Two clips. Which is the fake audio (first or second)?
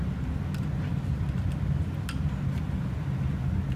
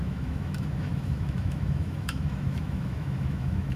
second